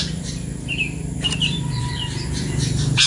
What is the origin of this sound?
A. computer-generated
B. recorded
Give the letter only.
A